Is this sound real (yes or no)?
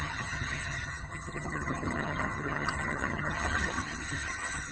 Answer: no